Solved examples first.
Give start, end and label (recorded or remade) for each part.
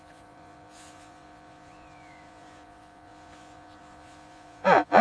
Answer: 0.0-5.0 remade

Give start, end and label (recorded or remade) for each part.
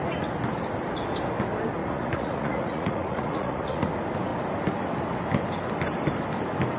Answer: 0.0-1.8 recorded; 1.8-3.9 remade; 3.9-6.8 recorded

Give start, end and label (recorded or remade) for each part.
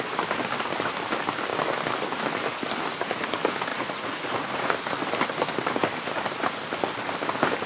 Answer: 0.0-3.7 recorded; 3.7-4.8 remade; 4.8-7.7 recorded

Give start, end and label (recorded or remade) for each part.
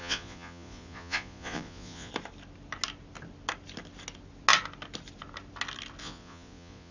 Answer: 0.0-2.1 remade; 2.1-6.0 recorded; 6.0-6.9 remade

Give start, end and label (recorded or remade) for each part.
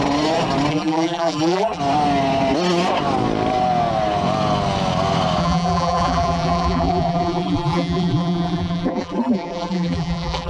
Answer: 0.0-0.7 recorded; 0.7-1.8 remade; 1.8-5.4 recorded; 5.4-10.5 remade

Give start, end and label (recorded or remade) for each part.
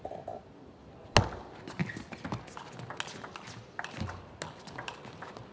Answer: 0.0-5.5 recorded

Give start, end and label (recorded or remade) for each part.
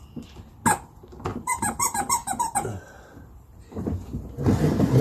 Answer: 0.0-1.3 recorded; 1.3-4.3 remade; 4.3-5.0 recorded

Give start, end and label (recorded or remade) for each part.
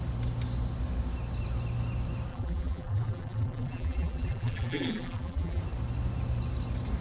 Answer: 0.0-2.3 recorded; 2.3-5.6 remade; 5.6-7.0 recorded